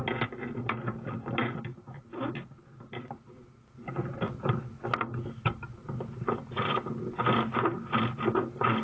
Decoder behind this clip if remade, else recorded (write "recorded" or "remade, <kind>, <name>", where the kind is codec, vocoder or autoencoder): recorded